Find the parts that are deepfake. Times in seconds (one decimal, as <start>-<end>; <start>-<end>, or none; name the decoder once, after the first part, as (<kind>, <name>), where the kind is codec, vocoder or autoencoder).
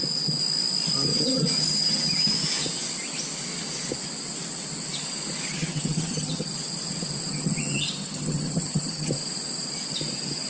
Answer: 1.1-2.3 (vocoder, HiFi-GAN); 5.5-6.5; 7.3-9.1